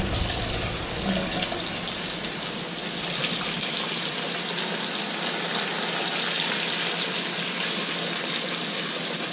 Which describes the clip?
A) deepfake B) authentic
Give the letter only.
B